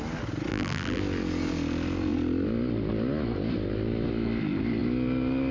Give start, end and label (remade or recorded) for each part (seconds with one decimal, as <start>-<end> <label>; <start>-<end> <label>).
0.0-0.5 recorded; 0.5-1.0 remade; 1.0-5.5 recorded